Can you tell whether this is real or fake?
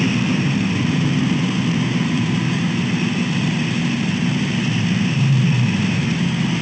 fake